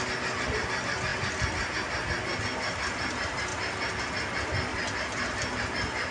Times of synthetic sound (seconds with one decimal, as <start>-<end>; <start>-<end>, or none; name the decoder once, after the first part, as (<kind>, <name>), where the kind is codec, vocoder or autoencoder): 4.7-5.6 (vocoder, BigVGAN v2)